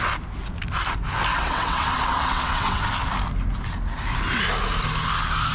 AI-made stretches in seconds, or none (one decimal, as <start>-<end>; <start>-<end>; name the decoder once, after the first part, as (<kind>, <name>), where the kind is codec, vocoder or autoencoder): 1.3-2.8 (vocoder, WaveNeXt)